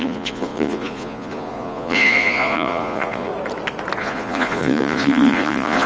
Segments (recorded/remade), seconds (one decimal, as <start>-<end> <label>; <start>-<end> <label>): 0.0-3.3 remade; 3.3-4.0 recorded; 4.0-5.9 remade